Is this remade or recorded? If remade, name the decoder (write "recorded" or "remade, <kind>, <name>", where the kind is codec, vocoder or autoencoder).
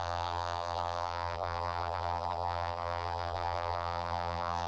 remade, vocoder, BigVGAN v2